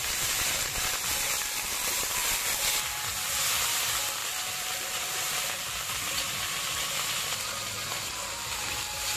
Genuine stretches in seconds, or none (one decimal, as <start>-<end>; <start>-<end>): 0.0-4.2; 6.0-9.2